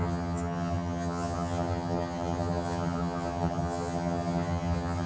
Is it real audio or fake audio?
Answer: fake